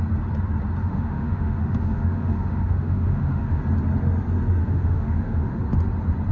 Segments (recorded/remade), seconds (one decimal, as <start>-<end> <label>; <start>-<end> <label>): 0.0-0.8 recorded; 0.8-3.6 remade; 3.6-4.6 recorded; 4.6-5.6 remade; 5.6-6.3 recorded